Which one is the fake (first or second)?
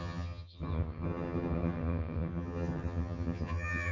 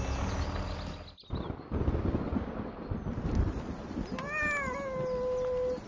first